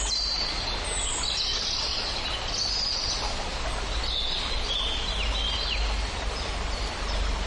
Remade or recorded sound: recorded